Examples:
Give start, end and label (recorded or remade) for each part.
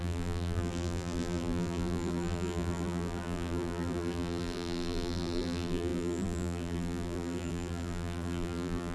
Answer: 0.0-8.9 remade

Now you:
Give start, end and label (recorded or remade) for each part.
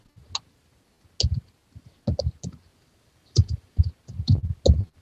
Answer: 0.0-2.7 recorded; 2.7-3.8 remade; 3.8-5.0 recorded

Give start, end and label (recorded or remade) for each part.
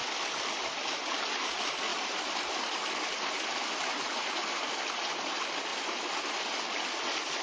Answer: 0.0-1.3 remade; 1.3-1.9 recorded; 1.9-4.3 remade; 4.3-5.7 recorded; 5.7-6.3 remade; 6.3-7.4 recorded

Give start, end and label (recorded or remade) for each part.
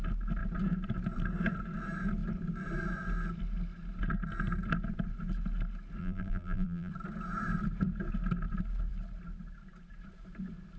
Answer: 0.0-6.0 recorded; 6.0-6.9 remade; 6.9-10.8 recorded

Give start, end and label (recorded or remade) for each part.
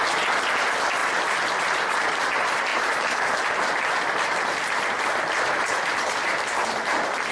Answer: 0.0-1.0 recorded; 1.0-2.1 remade; 2.1-2.7 recorded; 2.7-7.3 remade